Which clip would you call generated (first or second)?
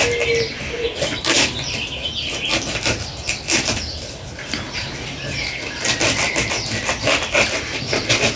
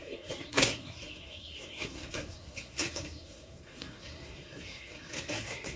second